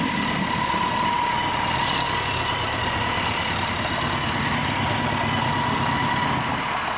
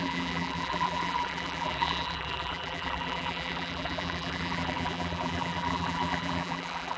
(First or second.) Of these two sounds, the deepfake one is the second